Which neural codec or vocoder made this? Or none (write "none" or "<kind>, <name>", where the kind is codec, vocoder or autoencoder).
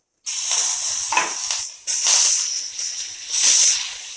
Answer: none